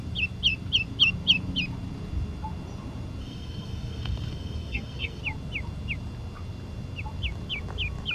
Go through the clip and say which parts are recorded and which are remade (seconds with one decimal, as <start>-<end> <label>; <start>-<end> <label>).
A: 0.0-3.2 recorded; 3.2-5.2 remade; 5.2-8.1 recorded